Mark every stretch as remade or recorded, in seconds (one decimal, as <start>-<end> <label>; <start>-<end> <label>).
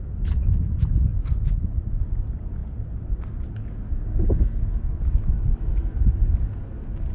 0.0-7.1 recorded